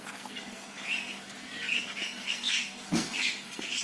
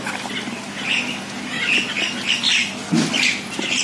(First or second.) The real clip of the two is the second